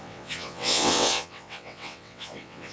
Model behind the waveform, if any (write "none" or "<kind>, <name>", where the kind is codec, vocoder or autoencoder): vocoder, WaveNeXt